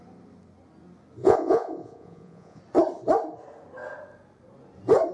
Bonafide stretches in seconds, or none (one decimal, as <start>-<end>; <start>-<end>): 0.0-1.2; 2.6-5.1